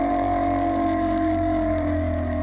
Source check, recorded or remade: remade